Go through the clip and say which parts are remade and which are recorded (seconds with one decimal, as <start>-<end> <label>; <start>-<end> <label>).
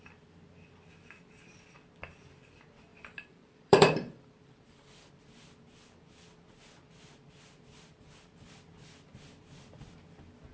0.0-2.9 recorded; 2.9-5.1 remade; 5.1-10.5 recorded